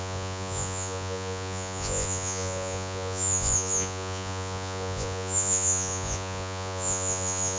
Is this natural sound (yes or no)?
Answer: no